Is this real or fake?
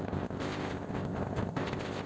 fake